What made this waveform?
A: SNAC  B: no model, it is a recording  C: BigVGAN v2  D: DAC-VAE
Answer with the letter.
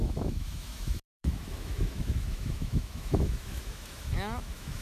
D